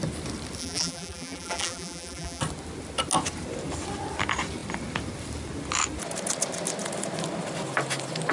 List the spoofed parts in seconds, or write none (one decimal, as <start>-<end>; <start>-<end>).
0.6-2.4